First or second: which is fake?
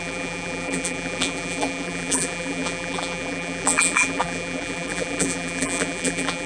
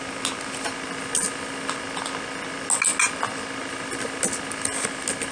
first